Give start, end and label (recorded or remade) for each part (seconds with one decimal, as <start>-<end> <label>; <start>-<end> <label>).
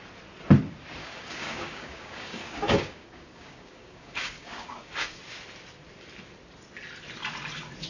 0.0-1.0 recorded; 1.0-5.2 remade; 5.2-7.9 recorded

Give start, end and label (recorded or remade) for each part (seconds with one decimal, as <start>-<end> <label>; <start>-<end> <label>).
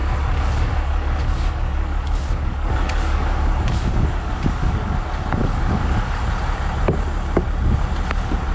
0.0-4.9 remade; 4.9-5.4 recorded; 5.4-6.2 remade; 6.2-8.5 recorded